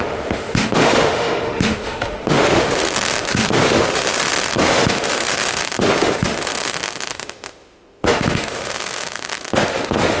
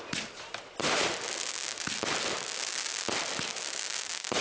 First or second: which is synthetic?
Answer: first